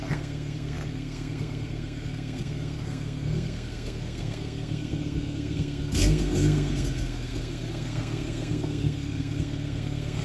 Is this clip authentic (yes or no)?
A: no